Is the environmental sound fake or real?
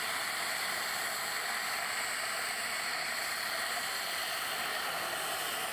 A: fake